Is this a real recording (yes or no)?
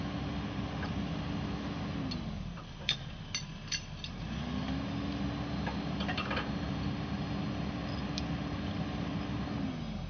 yes